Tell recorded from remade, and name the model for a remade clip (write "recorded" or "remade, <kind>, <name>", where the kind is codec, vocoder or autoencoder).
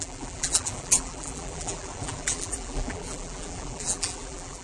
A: remade, vocoder, BigVGAN v2